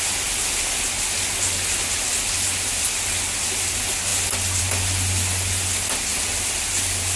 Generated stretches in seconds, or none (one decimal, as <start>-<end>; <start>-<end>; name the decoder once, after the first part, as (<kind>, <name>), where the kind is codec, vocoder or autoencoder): none

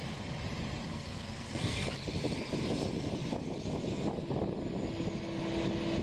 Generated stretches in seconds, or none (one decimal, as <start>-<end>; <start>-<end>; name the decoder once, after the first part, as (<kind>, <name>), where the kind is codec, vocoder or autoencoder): 0.9-1.9 (codec, SNAC)

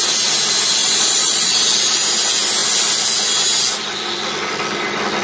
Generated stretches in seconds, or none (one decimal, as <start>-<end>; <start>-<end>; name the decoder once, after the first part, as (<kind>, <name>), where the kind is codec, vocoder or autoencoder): 0.8-1.5 (vocoder, Vocos)

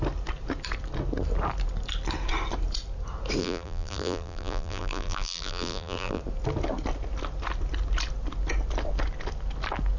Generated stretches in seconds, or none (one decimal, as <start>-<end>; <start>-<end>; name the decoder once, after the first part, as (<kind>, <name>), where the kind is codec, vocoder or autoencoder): 3.4-6.2 (vocoder, BigVGAN v2)

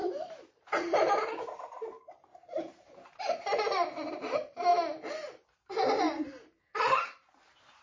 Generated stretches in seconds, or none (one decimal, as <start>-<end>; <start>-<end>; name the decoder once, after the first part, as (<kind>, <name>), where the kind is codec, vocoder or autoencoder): 0.0-4.7 (vocoder, BigVGAN v2); 6.6-7.8

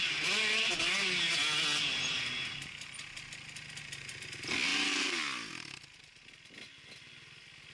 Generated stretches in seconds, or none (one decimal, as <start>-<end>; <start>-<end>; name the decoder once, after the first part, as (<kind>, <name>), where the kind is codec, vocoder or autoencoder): none

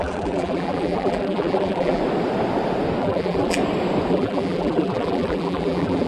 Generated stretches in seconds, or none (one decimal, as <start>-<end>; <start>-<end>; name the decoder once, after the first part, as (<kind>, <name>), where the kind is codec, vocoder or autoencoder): 0.0-2.0 (vocoder, BigVGAN v2); 3.0-3.6; 4.1-6.1

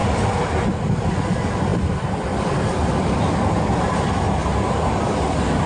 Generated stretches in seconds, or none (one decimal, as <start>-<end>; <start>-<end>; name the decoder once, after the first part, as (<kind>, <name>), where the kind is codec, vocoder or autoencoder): none